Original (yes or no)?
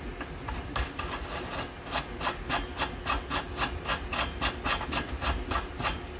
yes